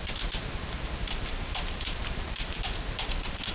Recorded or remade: recorded